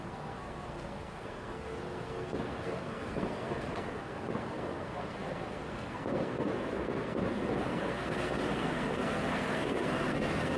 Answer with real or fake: fake